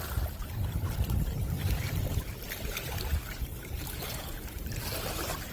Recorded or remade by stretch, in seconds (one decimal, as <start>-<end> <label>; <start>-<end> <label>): 0.0-1.4 recorded; 1.4-2.3 remade; 2.3-3.5 recorded; 3.5-5.5 remade